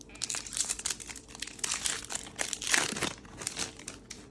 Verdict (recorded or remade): recorded